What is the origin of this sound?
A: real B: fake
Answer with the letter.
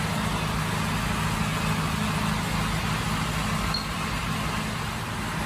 A